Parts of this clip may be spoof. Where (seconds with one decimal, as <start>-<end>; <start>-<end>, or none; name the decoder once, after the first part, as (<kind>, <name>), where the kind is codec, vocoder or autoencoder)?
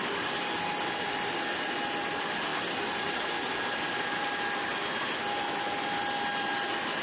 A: none